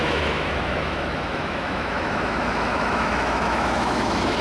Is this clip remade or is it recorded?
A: remade